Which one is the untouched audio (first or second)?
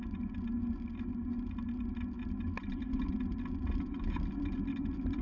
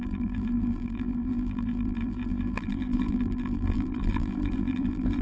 first